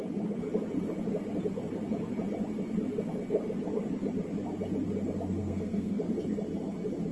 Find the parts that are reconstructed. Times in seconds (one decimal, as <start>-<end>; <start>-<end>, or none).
5.4-6.0